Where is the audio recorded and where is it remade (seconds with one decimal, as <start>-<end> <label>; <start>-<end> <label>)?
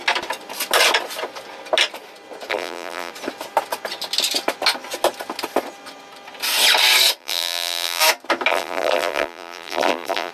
0.0-2.5 recorded; 2.5-3.1 remade; 3.1-7.2 recorded; 7.2-8.0 remade; 8.0-8.5 recorded; 8.5-10.3 remade